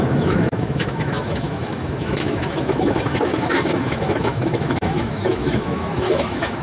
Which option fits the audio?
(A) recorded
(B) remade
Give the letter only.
B